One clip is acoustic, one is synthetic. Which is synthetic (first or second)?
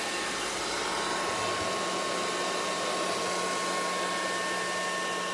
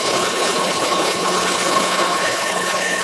second